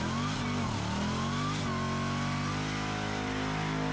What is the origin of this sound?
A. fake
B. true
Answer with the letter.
B